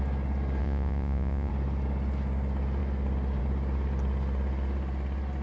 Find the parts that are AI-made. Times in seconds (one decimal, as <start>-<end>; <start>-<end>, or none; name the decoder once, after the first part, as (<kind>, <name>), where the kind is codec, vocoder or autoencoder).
0.6-1.5 (vocoder, Vocos)